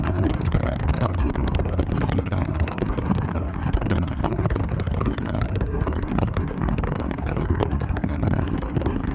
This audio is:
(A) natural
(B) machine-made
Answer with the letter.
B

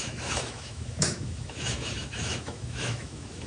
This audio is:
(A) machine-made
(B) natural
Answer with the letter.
A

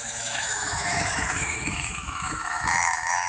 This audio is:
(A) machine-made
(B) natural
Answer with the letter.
A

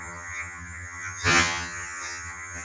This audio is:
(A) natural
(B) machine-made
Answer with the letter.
B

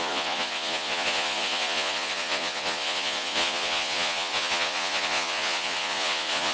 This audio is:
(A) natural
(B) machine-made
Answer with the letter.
B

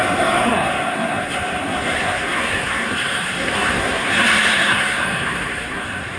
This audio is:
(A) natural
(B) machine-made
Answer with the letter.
B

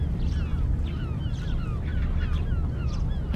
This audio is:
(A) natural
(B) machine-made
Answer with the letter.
A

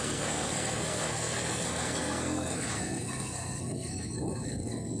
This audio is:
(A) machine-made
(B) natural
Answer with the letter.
A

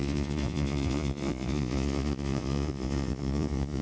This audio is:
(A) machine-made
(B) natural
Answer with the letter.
A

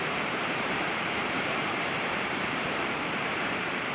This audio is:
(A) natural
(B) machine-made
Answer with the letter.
B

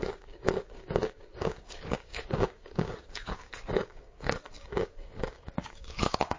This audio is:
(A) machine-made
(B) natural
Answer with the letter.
A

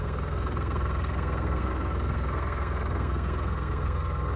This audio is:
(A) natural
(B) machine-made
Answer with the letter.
B